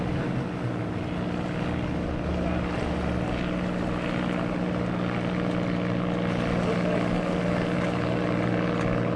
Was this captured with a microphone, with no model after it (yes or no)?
yes